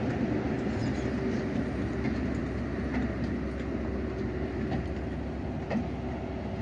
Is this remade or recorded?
recorded